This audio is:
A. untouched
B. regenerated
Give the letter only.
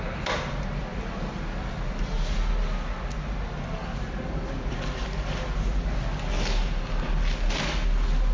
A